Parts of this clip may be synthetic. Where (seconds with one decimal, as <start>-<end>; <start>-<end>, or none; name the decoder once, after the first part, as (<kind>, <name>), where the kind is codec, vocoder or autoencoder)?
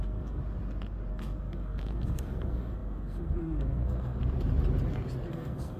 0.0-0.4 (codec, SNAC); 1.1-4.2; 5.3-5.8